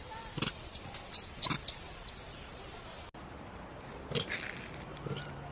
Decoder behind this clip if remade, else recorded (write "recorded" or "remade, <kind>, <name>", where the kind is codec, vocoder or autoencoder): recorded